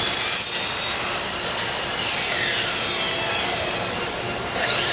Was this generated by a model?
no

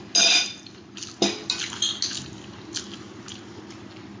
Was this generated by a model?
no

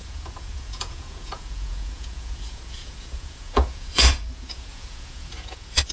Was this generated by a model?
yes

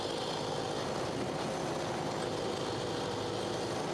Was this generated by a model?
no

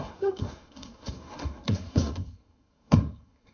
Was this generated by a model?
yes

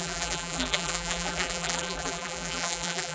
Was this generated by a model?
yes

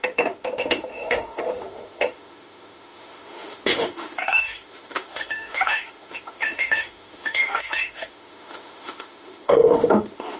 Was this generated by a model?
yes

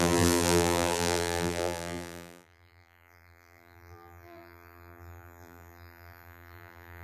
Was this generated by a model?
yes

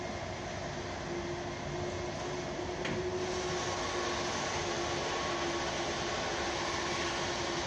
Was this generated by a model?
no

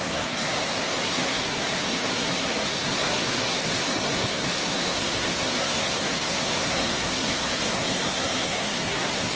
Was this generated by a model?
yes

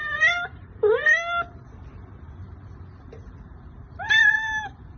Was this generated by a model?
yes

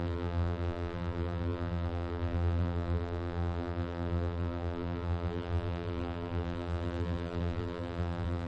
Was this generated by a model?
yes